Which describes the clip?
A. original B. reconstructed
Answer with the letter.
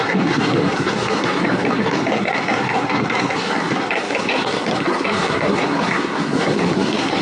B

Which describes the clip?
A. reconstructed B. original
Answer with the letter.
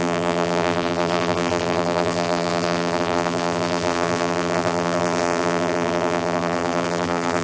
A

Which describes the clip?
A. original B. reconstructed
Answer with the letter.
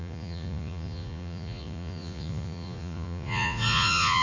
B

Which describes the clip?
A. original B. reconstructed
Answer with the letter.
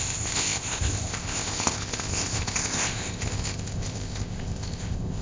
B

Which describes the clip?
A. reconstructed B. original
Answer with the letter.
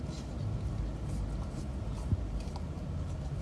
B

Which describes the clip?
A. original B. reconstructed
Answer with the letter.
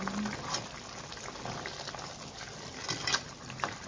A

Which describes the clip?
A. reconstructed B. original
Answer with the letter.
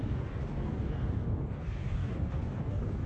A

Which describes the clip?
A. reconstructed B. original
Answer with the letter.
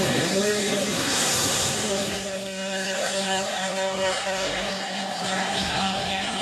A